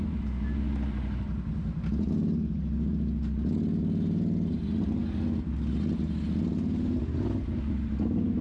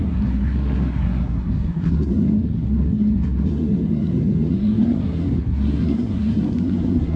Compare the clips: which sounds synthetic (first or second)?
second